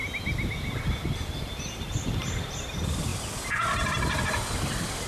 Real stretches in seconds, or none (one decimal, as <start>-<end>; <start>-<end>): 0.0-5.1